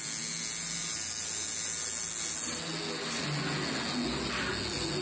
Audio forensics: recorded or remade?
recorded